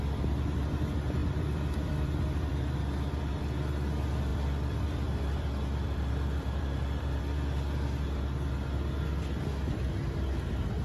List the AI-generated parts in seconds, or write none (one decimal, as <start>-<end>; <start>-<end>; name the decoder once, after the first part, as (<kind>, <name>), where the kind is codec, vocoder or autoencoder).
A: 1.2-3.2 (vocoder, BigVGAN v2); 4.3-7.2